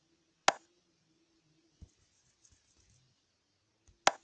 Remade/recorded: recorded